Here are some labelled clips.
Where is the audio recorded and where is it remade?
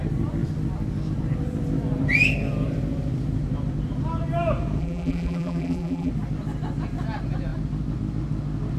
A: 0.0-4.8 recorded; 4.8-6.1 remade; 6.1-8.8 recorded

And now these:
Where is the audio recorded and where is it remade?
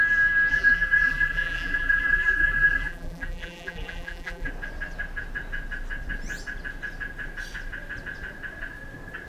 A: 0.0-0.5 recorded; 0.5-4.5 remade; 4.5-9.3 recorded